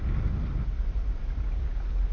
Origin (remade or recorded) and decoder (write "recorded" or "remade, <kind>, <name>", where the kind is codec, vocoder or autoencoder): recorded